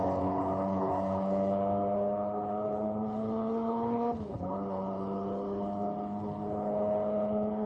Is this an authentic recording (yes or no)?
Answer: no